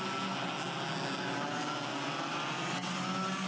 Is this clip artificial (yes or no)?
no